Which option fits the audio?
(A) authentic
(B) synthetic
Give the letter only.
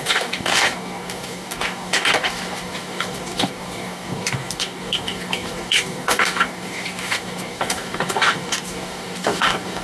B